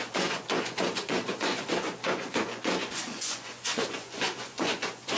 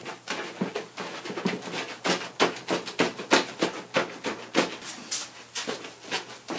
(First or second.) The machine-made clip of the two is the first